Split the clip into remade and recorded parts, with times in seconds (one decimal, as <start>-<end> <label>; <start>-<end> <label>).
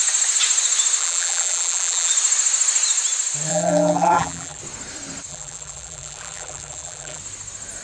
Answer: 0.0-1.0 recorded; 1.0-2.1 remade; 2.1-3.5 recorded; 3.5-4.6 remade; 4.6-5.3 recorded; 5.3-7.2 remade; 7.2-7.8 recorded